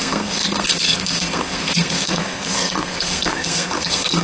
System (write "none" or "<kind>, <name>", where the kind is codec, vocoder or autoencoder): codec, SNAC